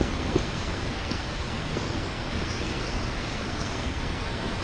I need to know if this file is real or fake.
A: fake